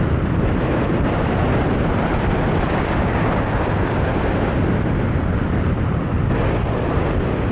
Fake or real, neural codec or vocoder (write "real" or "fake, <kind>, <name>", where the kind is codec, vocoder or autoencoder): real